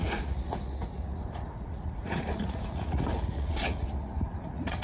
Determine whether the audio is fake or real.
fake